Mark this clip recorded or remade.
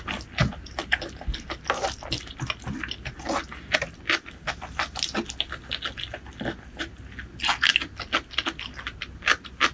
recorded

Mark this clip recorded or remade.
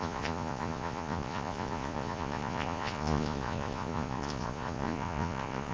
remade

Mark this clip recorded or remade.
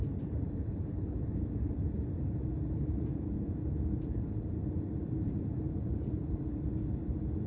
remade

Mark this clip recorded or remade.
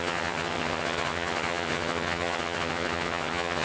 remade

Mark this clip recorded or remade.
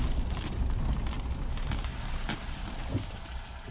recorded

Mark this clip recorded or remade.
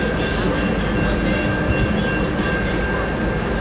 recorded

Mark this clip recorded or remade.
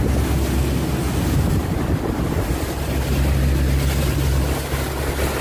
recorded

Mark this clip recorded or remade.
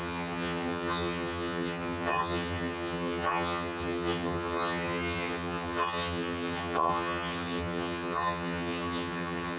remade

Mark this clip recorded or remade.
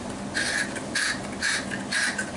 recorded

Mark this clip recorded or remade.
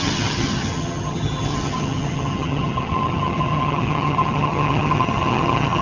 remade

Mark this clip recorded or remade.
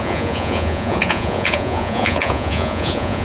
remade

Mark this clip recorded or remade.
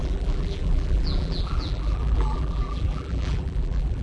remade